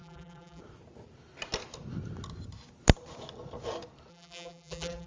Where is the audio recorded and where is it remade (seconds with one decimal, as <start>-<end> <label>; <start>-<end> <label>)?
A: 0.0-0.6 remade; 0.6-4.1 recorded; 4.1-5.1 remade

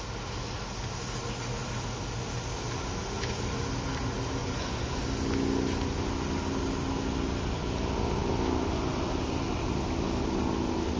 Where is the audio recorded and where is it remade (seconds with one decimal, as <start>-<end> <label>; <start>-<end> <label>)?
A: 0.0-4.4 recorded; 4.4-5.0 remade; 5.0-11.0 recorded